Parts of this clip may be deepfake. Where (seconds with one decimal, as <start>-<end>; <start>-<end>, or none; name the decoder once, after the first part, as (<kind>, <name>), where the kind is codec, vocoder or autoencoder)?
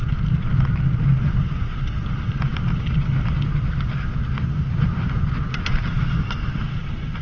none